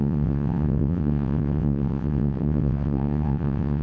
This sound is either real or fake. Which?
fake